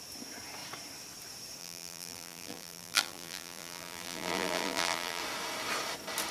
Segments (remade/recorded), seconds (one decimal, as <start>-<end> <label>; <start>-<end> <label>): 0.0-1.6 recorded; 1.6-5.2 remade; 5.2-6.3 recorded